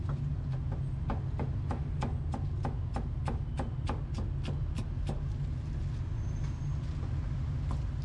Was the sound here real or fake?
real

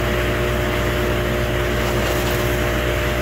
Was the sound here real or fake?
real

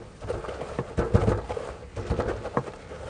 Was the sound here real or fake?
real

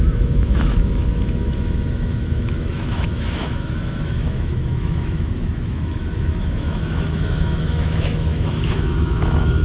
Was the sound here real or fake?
fake